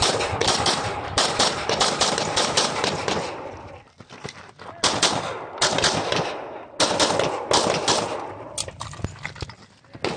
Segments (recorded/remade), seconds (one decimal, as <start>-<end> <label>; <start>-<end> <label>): 0.0-0.4 recorded; 0.4-3.0 remade; 3.0-10.2 recorded